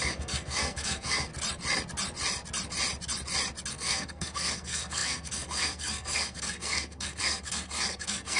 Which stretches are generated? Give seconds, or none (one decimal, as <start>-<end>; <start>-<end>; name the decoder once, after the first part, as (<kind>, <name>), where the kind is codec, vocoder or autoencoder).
0.0-1.3 (codec, SNAC); 3.7-8.4